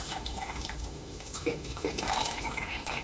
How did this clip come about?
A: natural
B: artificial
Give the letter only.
B